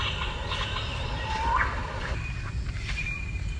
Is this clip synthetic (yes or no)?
yes